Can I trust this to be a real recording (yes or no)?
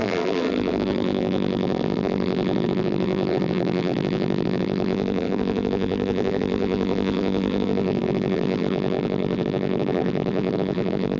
no